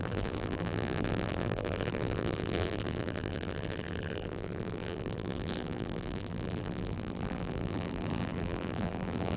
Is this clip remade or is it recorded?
remade